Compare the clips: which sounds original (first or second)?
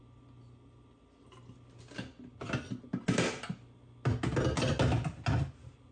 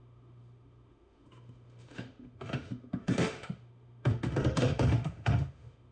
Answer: first